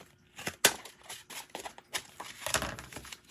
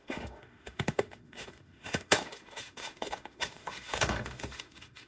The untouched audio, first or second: first